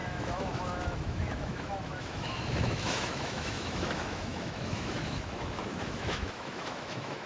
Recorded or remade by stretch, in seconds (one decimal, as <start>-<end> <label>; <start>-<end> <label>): 0.0-7.3 remade